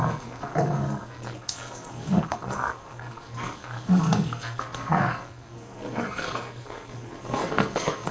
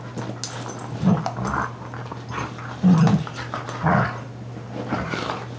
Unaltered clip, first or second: second